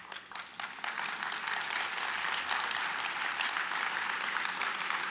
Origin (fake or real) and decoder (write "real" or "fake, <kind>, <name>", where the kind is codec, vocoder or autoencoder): real